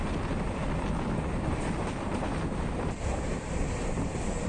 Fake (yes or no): no